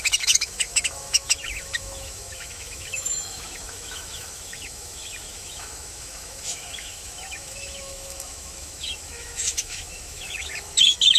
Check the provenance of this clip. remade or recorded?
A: remade